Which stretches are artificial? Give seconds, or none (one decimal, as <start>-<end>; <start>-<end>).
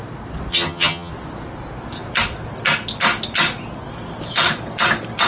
0.5-1.1